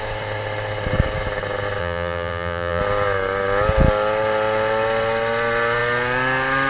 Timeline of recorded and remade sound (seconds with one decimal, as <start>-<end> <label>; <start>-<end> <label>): 0.0-1.8 recorded; 1.8-2.8 remade; 2.8-6.7 recorded